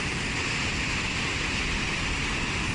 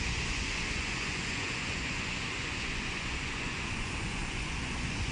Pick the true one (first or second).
first